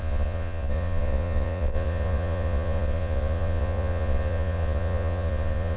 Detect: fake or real fake